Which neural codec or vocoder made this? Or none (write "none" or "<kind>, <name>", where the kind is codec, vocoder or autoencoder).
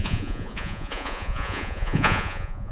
vocoder, Vocos